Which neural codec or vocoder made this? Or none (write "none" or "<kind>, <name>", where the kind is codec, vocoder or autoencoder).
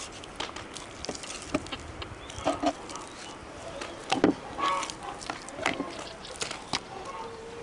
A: none